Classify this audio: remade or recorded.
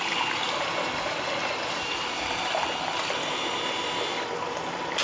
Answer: recorded